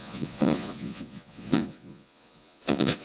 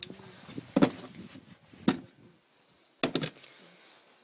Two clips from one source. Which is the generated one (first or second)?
first